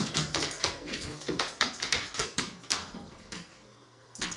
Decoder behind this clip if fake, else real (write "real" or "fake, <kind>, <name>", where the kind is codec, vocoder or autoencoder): fake, codec, SNAC